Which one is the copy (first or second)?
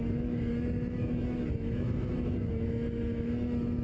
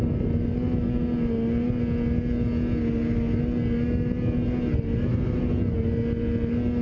first